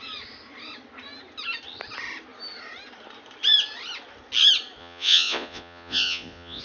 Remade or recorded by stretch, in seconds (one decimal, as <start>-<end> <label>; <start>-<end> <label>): 0.0-4.8 recorded; 4.8-6.6 remade